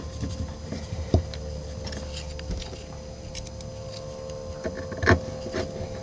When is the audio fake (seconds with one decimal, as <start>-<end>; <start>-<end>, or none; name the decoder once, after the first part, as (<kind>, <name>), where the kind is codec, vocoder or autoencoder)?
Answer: none